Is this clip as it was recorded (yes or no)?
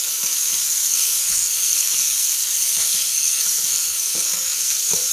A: no